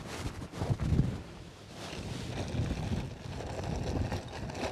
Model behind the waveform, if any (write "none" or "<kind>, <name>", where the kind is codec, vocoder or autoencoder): none